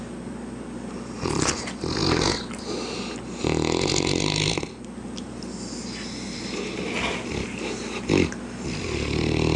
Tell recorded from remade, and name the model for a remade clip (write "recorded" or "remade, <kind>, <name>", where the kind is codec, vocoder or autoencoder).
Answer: recorded